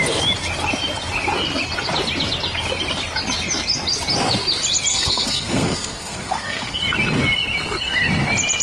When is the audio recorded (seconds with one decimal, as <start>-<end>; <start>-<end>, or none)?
0.0-4.9; 6.8-8.6